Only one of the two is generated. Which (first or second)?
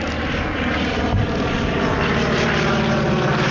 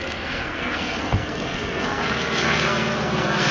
second